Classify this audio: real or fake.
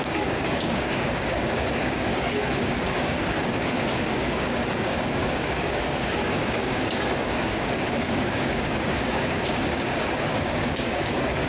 fake